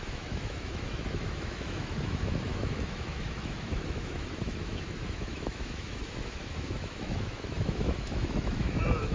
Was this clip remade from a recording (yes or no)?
yes